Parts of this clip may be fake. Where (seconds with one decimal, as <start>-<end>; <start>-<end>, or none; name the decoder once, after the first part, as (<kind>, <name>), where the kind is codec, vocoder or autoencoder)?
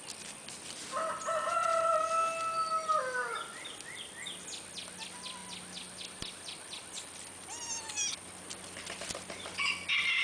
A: none